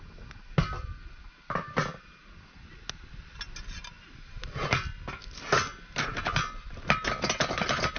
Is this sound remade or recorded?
recorded